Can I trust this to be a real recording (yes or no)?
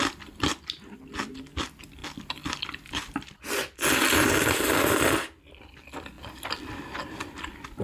yes